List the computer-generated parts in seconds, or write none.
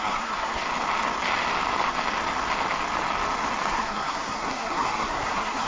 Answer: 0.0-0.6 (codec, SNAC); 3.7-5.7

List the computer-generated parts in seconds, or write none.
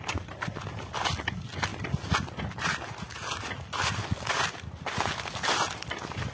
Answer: none